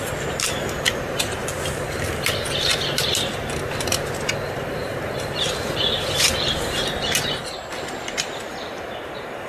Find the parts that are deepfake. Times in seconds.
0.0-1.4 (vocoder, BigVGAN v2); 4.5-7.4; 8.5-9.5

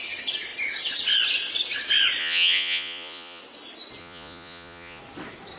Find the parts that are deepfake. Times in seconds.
2.2-3.4 (vocoder, Vocos); 4.0-5.0

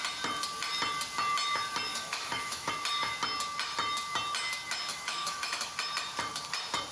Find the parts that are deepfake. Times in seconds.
1.9-2.7 (autoencoder, DAC-VAE); 4.9-5.7